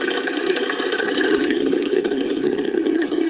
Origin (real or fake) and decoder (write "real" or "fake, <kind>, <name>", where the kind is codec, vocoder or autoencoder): fake, codec, SNAC